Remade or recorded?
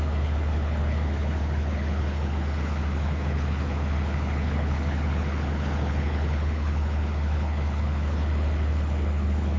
remade